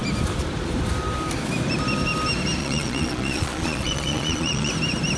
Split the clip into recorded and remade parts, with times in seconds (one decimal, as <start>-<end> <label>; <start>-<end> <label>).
0.0-2.6 recorded; 2.6-4.7 remade; 4.7-5.2 recorded